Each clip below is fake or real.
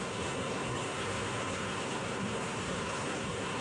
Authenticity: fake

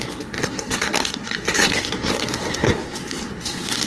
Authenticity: fake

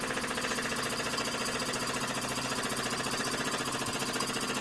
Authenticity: real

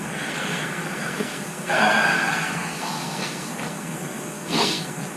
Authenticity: fake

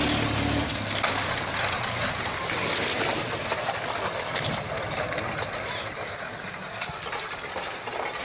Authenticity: real